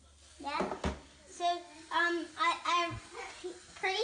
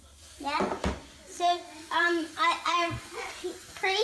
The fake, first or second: second